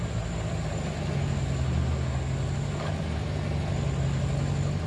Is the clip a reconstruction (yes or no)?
no